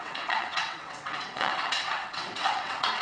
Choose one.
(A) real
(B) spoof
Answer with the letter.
B